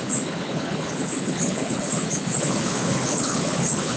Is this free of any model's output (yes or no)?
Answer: no